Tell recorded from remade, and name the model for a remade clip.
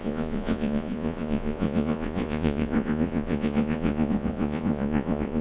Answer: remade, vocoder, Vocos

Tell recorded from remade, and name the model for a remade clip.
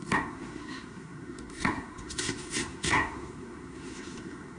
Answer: remade, codec, SNAC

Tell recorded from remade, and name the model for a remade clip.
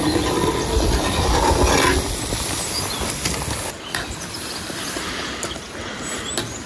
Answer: recorded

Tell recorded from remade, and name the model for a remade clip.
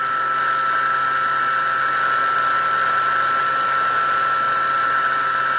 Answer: recorded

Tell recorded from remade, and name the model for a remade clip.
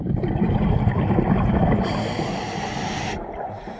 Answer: recorded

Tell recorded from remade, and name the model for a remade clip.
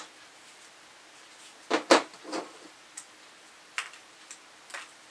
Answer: recorded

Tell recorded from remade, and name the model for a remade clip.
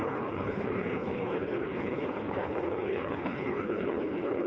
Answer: remade, codec, HILCodec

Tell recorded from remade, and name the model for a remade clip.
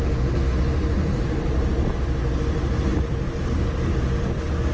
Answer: recorded